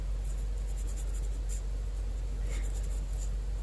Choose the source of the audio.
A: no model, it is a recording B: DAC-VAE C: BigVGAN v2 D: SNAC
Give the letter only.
A